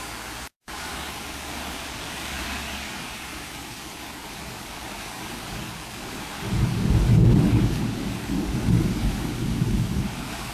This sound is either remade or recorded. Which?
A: remade